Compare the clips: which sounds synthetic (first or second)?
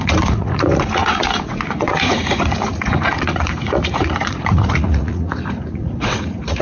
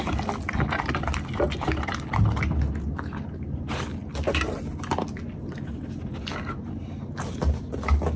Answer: first